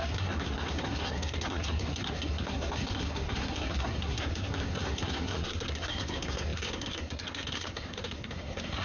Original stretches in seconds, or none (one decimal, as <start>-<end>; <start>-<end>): none